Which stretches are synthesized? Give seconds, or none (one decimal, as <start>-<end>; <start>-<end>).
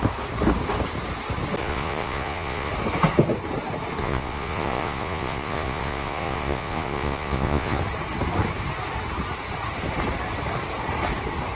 1.6-2.7; 4.0-7.8